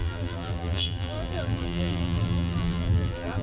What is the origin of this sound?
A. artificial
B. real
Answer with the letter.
A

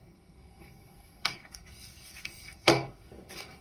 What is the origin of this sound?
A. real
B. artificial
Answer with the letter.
B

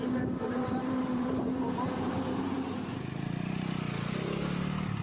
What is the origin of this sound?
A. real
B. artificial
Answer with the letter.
B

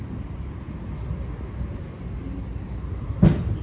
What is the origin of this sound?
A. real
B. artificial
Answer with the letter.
A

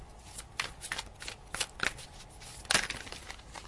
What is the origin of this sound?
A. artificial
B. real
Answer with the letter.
B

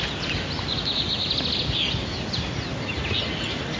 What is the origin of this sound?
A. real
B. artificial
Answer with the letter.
A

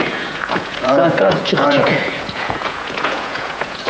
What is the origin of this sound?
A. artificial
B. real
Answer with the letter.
A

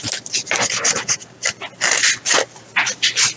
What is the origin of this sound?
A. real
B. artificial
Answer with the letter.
A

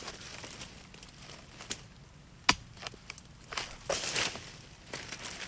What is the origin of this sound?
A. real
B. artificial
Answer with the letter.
A